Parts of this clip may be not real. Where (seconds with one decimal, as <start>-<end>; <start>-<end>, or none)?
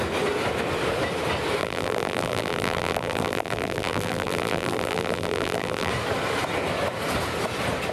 1.6-5.9